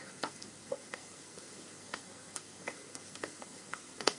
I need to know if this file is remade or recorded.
remade